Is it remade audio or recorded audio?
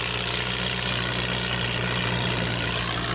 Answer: recorded